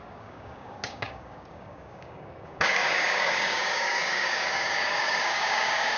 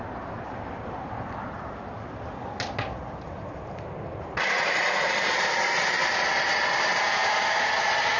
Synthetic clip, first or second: first